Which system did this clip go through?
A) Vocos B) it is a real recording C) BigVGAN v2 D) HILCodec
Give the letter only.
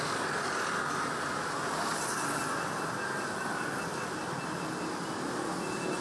B